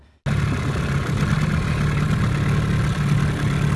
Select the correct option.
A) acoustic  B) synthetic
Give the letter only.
A